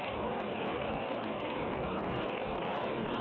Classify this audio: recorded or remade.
remade